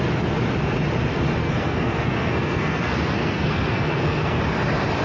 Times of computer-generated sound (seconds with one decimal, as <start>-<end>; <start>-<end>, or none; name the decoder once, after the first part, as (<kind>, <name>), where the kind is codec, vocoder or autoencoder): 1.4-4.4 (codec, SNAC)